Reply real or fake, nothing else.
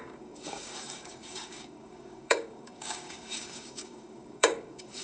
fake